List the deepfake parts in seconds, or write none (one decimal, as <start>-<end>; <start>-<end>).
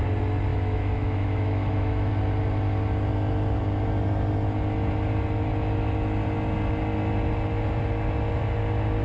0.5-2.1